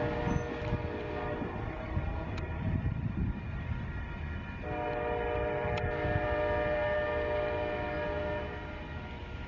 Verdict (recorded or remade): recorded